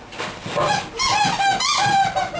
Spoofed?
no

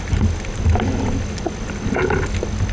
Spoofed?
no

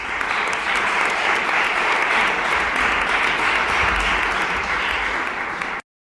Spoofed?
no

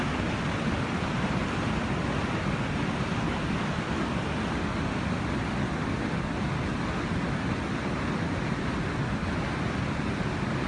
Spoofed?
no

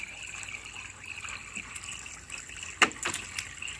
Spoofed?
no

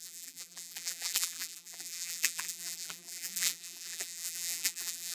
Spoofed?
yes